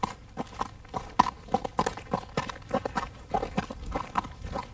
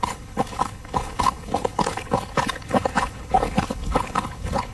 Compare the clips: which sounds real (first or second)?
first